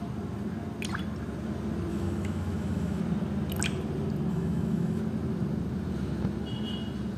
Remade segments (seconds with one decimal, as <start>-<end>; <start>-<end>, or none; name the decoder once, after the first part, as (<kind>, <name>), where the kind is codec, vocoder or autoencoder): 1.9-3.0 (autoencoder, DAC-VAE); 4.3-5.0

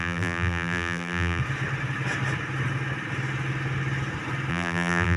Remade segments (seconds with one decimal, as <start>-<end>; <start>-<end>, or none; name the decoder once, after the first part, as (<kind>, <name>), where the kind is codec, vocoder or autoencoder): 0.0-1.4 (vocoder, BigVGAN v2); 4.5-5.2

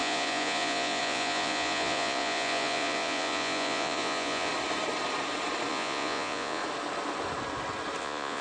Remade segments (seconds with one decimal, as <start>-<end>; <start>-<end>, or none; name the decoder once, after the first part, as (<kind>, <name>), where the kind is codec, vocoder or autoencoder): 0.0-4.5 (vocoder, Vocos); 5.7-6.6; 8.0-8.4

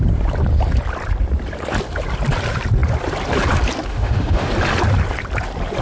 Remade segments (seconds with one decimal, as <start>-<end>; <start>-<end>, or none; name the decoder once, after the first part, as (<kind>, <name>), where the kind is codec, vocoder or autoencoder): 3.9-4.5 (autoencoder, DAC-VAE)

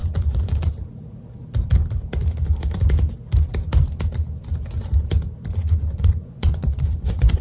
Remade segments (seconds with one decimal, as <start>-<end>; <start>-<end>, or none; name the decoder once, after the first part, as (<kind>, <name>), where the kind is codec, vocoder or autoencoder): 0.0-0.7 (vocoder, Vocos); 5.6-7.4

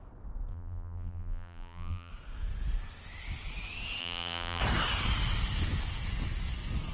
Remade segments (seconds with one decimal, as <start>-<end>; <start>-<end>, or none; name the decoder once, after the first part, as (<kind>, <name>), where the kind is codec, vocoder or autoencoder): 0.5-2.1 (vocoder, BigVGAN v2); 4.0-4.6

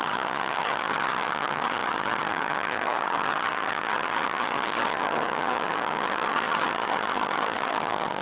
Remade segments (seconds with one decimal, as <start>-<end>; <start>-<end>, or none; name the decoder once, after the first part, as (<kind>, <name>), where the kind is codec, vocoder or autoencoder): 0.0-8.2 (vocoder, HiFi-GAN)